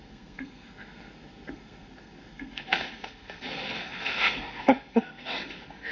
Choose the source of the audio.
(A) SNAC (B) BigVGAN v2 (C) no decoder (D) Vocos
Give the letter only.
A